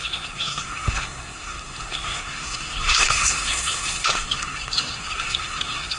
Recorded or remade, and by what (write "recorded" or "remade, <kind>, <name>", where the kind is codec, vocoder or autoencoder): remade, codec, SNAC